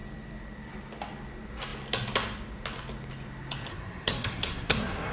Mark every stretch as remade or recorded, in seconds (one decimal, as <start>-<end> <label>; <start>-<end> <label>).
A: 0.0-3.7 recorded; 3.7-5.1 remade